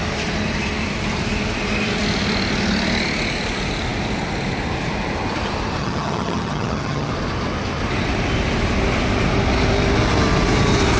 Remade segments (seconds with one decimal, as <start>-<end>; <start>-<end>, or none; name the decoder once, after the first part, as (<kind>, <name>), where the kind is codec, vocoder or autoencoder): 5.8-7.1 (vocoder, HiFi-GAN)